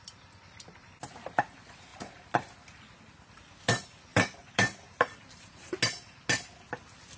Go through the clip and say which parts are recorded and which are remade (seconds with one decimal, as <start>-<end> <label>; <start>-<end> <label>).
0.0-4.1 recorded; 4.1-5.8 remade; 5.8-7.2 recorded